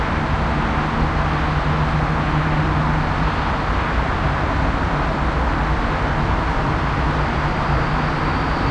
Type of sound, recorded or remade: recorded